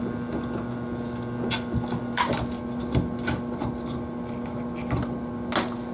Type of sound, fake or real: real